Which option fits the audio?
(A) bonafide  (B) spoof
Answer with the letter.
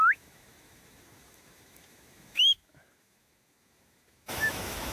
B